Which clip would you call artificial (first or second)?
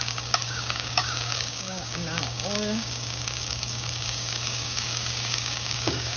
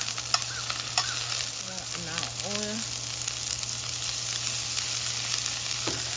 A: first